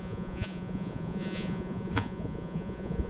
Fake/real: fake